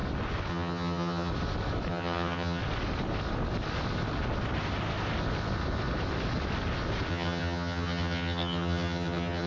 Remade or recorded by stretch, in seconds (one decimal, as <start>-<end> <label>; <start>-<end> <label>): 0.0-0.5 recorded; 0.5-1.3 remade; 1.3-1.9 recorded; 1.9-2.6 remade; 2.6-7.1 recorded; 7.1-9.5 remade